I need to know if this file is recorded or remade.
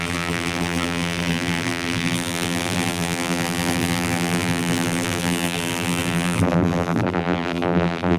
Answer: remade